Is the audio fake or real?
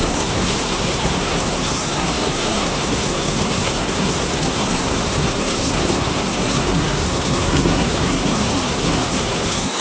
fake